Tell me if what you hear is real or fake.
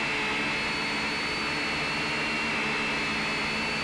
real